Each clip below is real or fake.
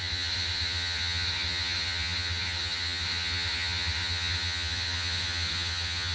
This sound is fake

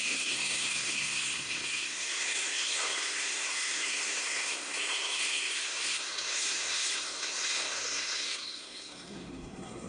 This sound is fake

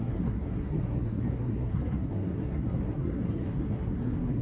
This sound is fake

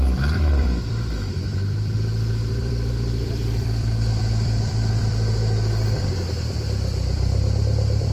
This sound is fake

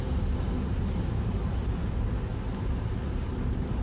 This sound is real